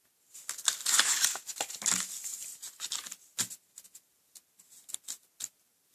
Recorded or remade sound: recorded